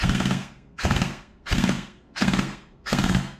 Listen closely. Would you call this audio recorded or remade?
remade